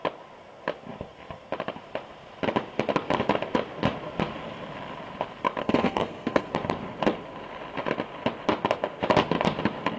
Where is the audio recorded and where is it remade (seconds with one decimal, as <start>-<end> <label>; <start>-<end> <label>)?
0.0-5.6 recorded; 5.6-6.5 remade; 6.5-10.0 recorded